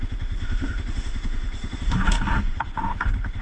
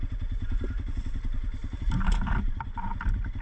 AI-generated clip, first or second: first